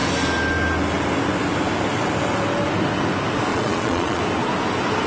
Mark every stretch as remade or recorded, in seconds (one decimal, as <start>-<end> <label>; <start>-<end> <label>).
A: 0.0-3.5 recorded; 3.5-4.2 remade; 4.2-5.1 recorded